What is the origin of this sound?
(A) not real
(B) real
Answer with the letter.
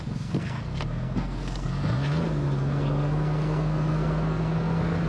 A